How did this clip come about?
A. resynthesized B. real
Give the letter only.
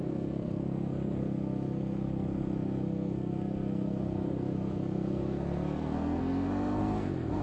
A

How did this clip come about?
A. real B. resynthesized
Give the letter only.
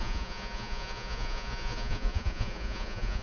B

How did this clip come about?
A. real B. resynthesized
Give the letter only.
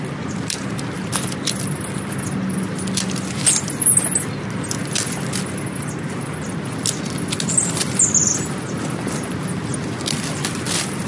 A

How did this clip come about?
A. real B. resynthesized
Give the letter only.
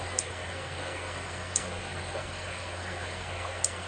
B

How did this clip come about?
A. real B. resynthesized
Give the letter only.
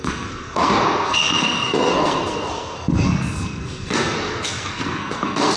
B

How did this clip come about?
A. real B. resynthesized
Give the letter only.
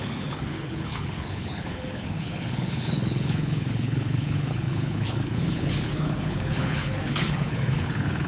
B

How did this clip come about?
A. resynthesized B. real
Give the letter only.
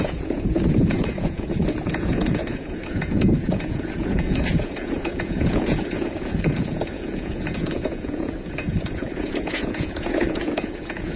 A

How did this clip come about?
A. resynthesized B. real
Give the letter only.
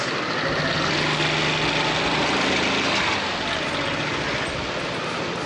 B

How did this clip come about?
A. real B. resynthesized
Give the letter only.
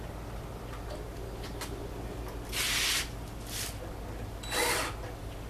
A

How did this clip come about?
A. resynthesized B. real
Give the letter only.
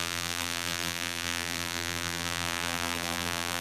A